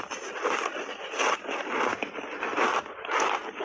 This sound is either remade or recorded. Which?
recorded